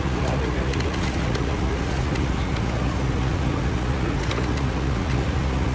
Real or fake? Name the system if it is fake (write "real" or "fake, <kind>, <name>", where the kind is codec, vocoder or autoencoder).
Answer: fake, vocoder, Vocos